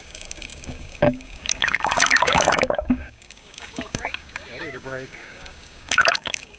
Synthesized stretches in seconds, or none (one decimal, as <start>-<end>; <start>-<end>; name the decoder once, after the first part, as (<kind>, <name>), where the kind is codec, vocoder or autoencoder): 0.0-6.6 (codec, DAC)